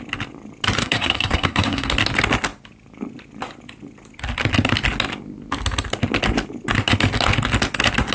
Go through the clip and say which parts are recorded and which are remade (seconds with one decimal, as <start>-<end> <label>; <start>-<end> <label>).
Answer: 0.0-0.8 recorded; 0.8-1.9 remade; 1.9-8.1 recorded